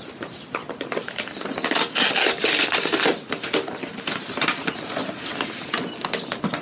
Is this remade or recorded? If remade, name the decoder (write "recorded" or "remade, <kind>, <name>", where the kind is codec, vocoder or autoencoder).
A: recorded